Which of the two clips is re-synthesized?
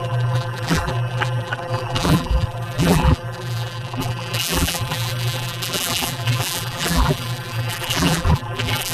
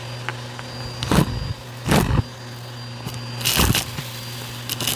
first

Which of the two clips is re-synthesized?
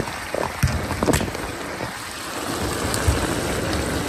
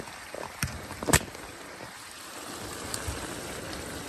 second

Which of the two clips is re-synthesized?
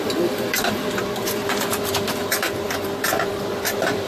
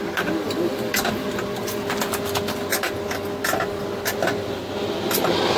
first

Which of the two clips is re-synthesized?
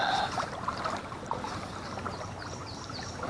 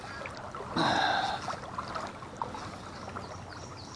first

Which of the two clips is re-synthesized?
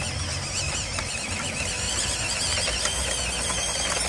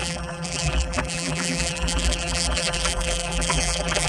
second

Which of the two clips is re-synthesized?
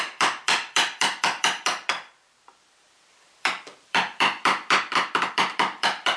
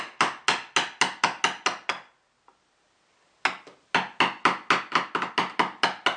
first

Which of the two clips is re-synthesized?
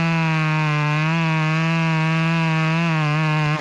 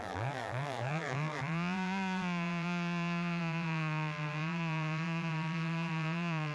second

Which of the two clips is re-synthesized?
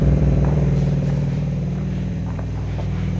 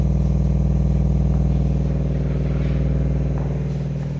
first